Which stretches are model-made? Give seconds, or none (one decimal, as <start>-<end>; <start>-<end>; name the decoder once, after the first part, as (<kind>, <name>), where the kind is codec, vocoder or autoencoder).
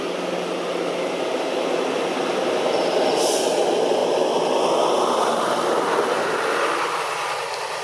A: none